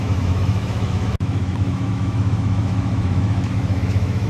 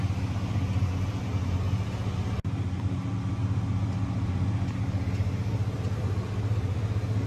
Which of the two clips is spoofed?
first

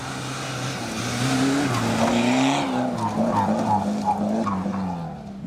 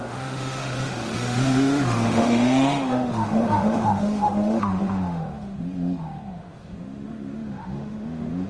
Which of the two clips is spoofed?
second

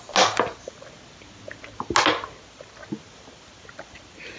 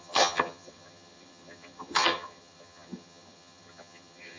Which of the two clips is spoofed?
second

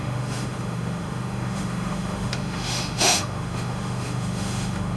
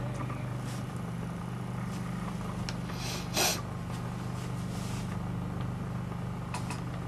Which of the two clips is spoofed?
first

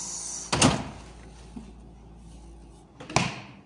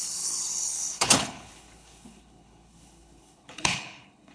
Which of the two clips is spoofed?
second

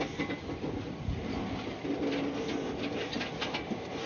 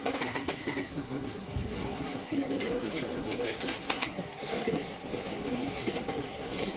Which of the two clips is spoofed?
second